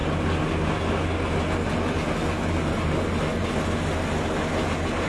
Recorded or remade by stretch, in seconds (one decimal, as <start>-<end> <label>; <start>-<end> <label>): 0.0-5.1 recorded